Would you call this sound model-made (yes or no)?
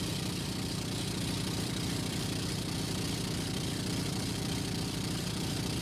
yes